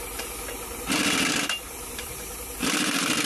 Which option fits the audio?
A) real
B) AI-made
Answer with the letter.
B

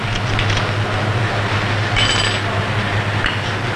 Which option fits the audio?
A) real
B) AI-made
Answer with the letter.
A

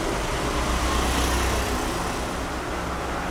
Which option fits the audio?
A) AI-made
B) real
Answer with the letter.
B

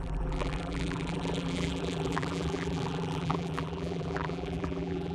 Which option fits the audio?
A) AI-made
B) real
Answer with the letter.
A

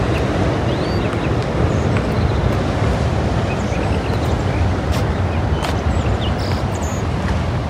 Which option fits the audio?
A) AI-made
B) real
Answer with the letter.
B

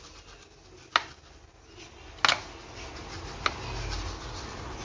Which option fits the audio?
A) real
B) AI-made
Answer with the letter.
A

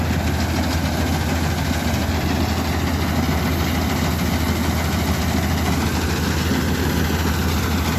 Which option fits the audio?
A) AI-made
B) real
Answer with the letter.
B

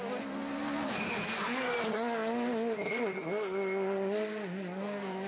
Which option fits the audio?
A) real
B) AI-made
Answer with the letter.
A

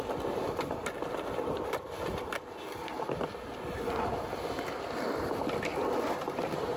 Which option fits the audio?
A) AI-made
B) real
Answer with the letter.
B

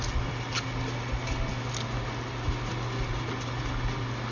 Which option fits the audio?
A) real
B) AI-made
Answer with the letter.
A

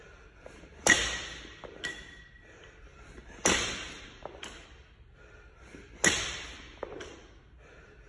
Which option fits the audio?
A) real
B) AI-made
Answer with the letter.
A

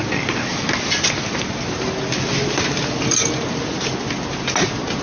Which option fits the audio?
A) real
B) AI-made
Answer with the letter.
A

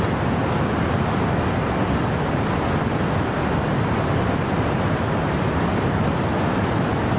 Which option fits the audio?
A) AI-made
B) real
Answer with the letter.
B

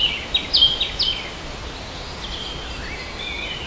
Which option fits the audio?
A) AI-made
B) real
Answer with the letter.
B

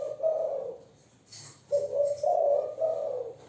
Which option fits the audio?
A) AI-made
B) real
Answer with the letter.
A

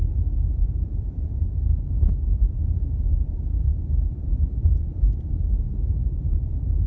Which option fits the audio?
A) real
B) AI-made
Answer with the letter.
B